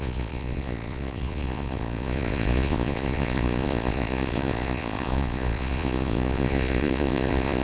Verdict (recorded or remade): remade